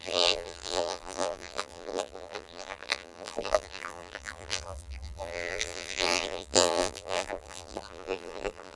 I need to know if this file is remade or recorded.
remade